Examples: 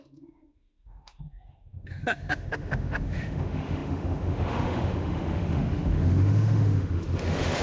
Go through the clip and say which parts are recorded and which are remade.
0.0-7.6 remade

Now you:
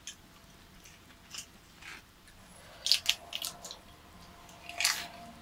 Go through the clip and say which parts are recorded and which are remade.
0.0-5.4 recorded

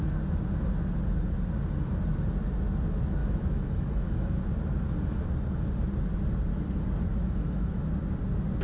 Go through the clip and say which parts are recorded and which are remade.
0.0-3.2 recorded; 3.2-4.4 remade; 4.4-7.1 recorded; 7.1-7.9 remade; 7.9-8.6 recorded

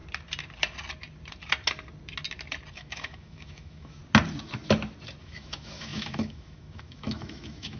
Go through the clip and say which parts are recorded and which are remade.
0.0-2.7 recorded; 2.7-4.0 remade; 4.0-5.2 recorded; 5.2-7.8 remade

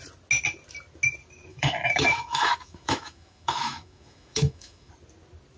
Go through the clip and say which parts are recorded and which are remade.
0.0-1.5 recorded; 1.5-4.9 remade; 4.9-5.6 recorded

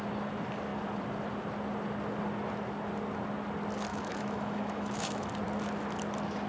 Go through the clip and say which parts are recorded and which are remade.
0.0-3.9 recorded; 3.9-5.3 remade; 5.3-6.5 recorded